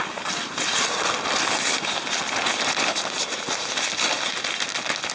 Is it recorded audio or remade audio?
recorded